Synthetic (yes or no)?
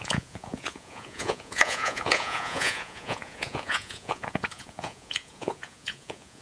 yes